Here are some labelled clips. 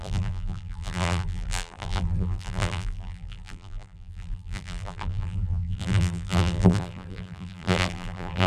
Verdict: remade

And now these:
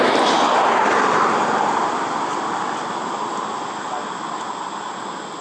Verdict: recorded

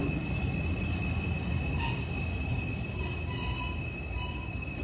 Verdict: recorded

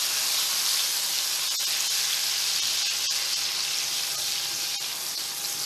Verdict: recorded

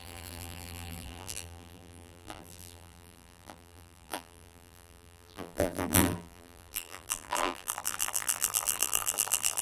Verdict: remade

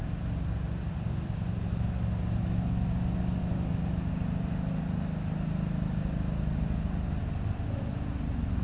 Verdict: recorded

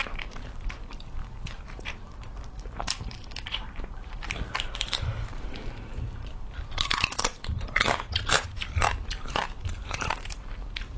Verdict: remade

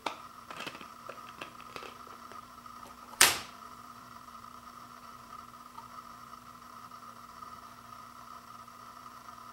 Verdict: remade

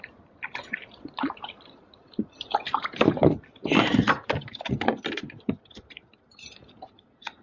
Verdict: remade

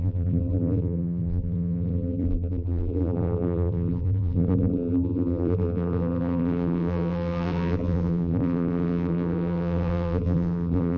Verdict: remade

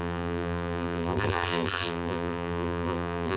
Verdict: remade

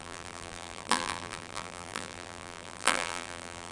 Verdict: remade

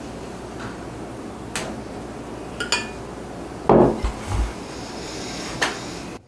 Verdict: recorded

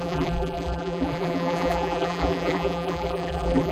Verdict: remade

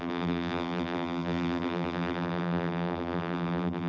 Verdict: remade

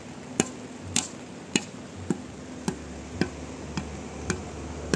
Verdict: recorded